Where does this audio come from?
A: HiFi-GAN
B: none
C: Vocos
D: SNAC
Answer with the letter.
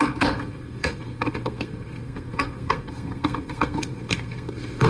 D